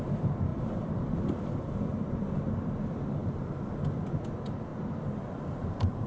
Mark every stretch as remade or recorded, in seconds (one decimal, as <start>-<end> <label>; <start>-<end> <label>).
0.0-0.5 recorded; 0.5-1.4 remade; 1.4-4.7 recorded; 4.7-5.3 remade; 5.3-6.1 recorded

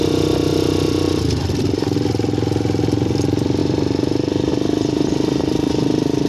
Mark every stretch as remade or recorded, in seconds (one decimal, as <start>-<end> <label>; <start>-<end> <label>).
0.0-0.5 recorded; 0.5-1.8 remade; 1.8-3.6 recorded; 3.6-4.5 remade; 4.5-6.3 recorded

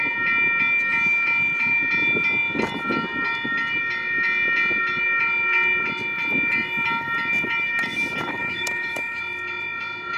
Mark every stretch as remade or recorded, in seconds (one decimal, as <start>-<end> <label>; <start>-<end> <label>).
0.0-8.4 recorded; 8.4-9.2 remade; 9.2-10.2 recorded

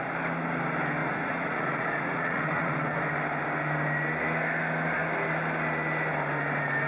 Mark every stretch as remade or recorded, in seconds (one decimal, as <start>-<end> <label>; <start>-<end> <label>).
0.0-1.0 recorded; 1.0-3.0 remade; 3.0-6.9 recorded

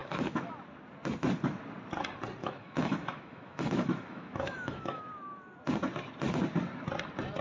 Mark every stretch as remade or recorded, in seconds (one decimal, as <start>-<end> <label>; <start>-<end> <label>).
0.0-0.5 remade; 0.5-2.4 recorded; 2.4-5.0 remade; 5.0-7.4 recorded